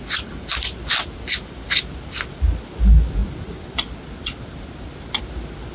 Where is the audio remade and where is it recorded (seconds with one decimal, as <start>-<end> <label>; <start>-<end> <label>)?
0.0-5.7 recorded